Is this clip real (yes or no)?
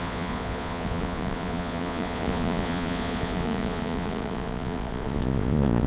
no